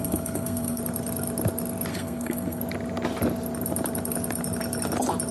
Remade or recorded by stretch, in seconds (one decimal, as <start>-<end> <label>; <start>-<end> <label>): 0.0-0.8 remade; 0.8-1.9 recorded; 1.9-2.6 remade; 2.6-5.3 recorded